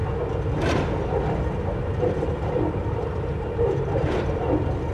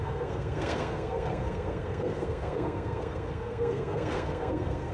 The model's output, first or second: second